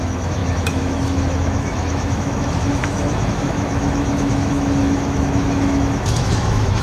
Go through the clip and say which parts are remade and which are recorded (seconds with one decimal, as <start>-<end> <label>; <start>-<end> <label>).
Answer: 0.0-6.8 remade